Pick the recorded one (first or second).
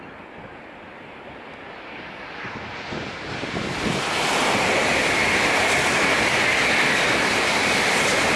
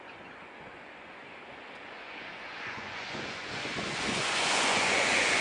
first